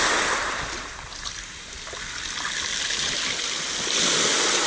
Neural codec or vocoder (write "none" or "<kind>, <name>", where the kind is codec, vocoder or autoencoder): none